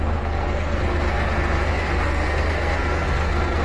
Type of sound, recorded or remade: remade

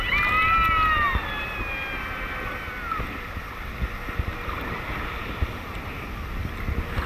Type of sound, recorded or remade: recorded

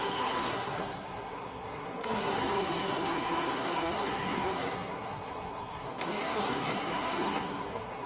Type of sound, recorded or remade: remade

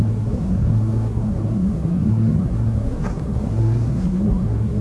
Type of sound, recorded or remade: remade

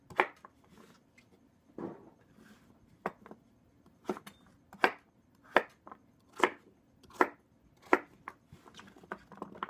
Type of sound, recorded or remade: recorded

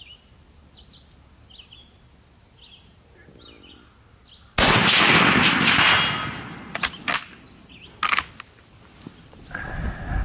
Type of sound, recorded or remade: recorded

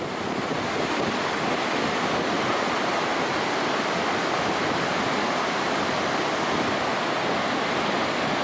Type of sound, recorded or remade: recorded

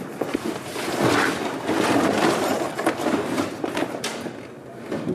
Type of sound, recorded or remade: recorded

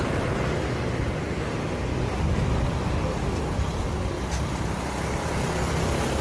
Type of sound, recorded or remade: recorded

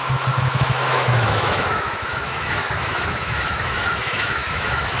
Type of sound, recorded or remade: remade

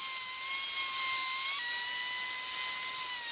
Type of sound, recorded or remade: recorded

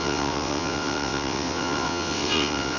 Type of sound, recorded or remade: remade